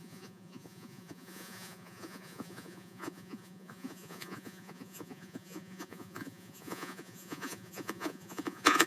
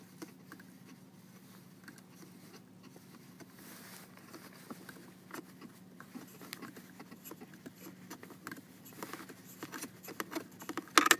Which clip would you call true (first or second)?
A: second